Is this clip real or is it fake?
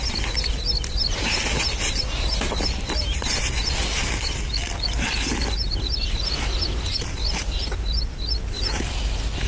real